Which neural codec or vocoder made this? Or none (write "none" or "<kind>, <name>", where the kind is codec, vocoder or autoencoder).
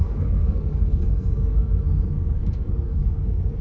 codec, SNAC